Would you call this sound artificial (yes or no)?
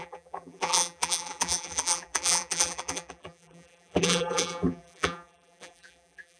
yes